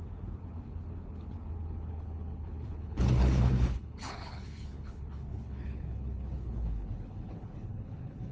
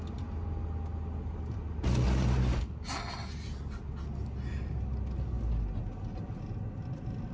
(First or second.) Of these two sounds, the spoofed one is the first